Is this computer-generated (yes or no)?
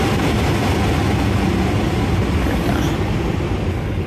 no